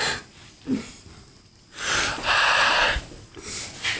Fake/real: real